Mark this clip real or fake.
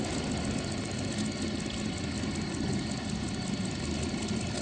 real